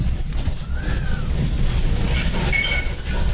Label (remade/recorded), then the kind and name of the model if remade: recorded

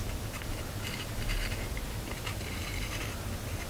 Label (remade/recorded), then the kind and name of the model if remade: recorded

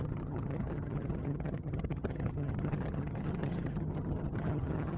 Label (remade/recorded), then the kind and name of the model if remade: remade, vocoder, HiFi-GAN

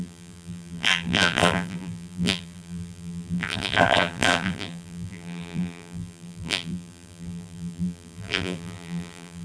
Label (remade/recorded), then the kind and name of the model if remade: remade, vocoder, BigVGAN v2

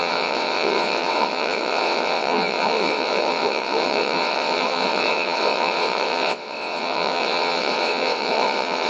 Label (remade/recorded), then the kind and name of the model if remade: remade, vocoder, WaveNeXt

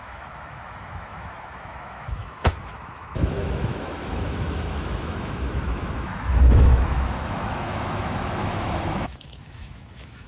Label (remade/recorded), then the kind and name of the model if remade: remade, autoencoder, DAC-VAE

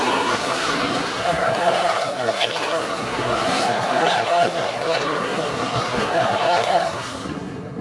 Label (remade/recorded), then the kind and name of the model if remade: remade, codec, SNAC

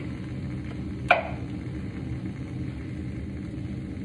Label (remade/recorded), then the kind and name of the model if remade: recorded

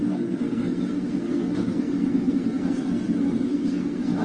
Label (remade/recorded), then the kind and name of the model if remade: remade, codec, SNAC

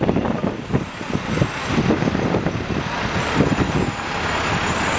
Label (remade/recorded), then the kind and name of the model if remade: remade, vocoder, BigVGAN v2